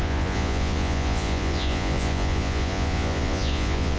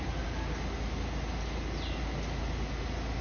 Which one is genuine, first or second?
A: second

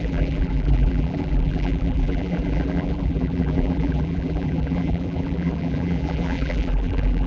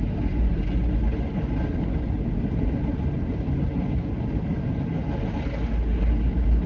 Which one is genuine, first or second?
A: second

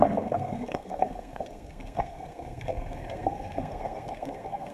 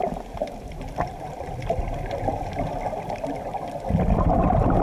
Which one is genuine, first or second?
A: second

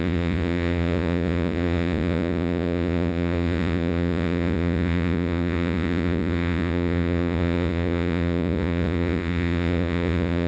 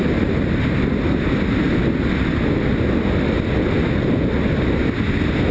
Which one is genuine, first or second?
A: second